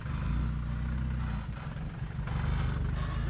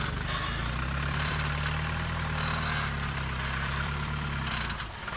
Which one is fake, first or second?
second